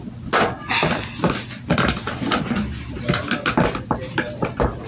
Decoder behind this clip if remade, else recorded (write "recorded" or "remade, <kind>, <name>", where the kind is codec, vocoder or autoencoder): recorded